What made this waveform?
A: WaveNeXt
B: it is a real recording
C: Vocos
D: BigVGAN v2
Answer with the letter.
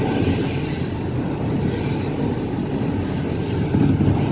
B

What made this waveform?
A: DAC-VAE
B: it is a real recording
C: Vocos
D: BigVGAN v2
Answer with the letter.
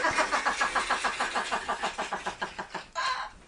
B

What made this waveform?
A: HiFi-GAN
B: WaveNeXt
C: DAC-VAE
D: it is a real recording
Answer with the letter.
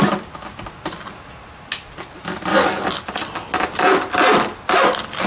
D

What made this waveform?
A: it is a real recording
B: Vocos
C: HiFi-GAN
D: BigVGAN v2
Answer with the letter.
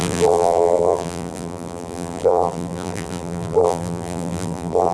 D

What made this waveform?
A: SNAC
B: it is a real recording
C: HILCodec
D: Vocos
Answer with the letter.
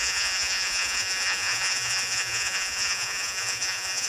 D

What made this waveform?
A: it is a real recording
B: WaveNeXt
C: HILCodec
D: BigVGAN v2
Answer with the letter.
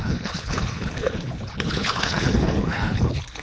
C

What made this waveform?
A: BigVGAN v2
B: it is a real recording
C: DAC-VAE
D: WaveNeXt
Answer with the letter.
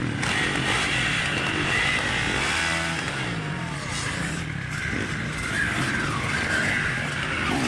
B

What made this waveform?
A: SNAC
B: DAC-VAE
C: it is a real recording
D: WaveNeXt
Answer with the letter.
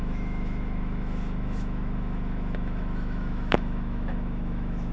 B